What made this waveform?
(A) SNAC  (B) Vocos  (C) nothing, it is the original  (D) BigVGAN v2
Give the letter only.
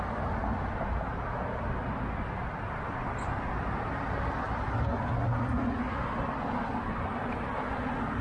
C